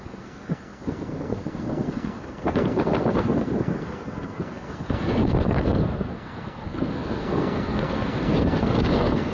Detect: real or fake fake